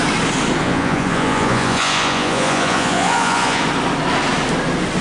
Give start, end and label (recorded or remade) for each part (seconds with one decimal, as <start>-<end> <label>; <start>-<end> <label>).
0.0-0.6 recorded; 0.6-3.6 remade; 3.6-5.0 recorded